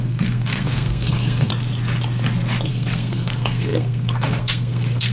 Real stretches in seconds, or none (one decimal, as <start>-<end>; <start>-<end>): 1.5-2.7